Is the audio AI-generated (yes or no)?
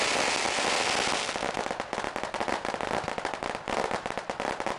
no